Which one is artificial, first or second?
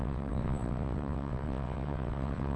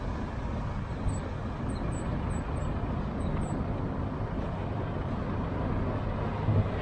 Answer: first